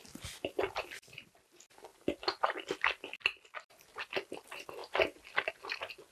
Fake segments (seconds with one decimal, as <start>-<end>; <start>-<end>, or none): none